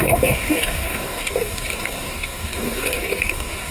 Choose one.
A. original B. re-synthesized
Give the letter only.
B